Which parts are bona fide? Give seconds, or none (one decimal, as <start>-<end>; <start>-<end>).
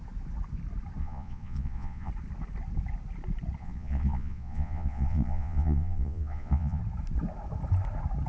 0.0-1.0; 2.1-3.6; 6.8-8.3